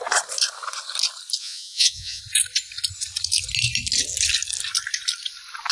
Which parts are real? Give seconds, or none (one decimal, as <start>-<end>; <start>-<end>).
0.0-1.4; 2.2-5.7